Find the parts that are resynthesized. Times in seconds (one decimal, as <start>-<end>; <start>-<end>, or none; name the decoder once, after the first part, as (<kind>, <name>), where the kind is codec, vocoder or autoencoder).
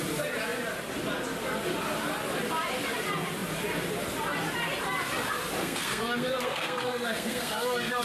5.6-8.0 (codec, SNAC)